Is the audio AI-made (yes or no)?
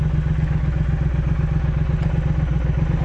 no